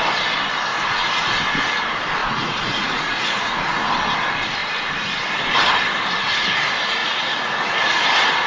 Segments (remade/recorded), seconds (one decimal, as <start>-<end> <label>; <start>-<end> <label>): 0.0-0.7 recorded; 0.7-1.3 remade; 1.3-2.2 recorded; 2.2-3.9 remade; 3.9-7.0 recorded; 7.0-7.9 remade; 7.9-8.5 recorded